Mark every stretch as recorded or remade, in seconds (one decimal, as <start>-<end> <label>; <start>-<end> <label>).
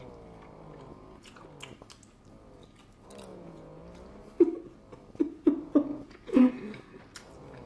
0.0-0.9 recorded; 0.9-1.4 remade; 1.4-3.3 recorded; 3.3-3.8 remade; 3.8-5.9 recorded; 5.9-6.5 remade; 6.5-7.7 recorded